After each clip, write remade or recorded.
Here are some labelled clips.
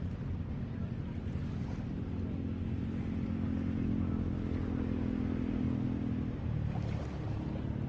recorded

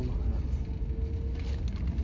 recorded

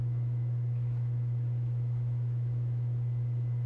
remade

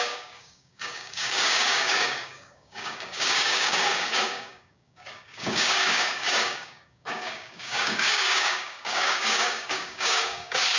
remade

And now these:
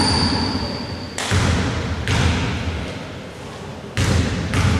recorded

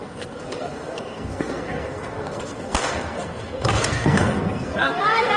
remade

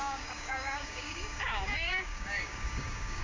remade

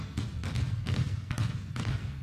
remade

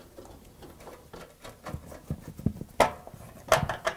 recorded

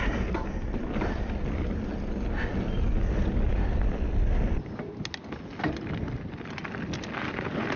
recorded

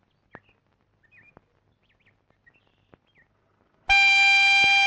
recorded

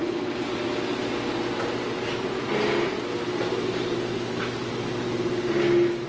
recorded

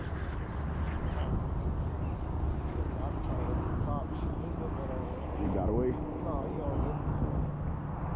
recorded